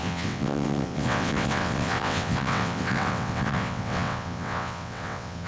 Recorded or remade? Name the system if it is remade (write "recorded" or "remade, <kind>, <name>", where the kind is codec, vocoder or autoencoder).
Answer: remade, vocoder, WaveNeXt